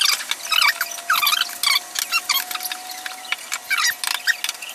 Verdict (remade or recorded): recorded